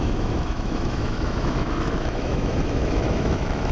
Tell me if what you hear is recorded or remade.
remade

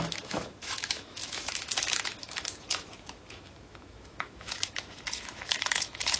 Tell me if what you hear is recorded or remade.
remade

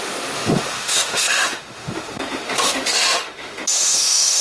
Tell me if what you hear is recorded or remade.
remade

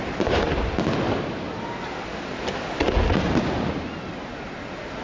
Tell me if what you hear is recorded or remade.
recorded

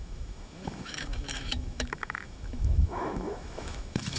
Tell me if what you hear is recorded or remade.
remade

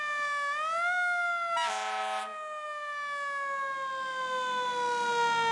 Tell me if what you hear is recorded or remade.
recorded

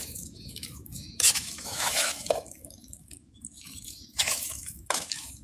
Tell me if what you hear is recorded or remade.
remade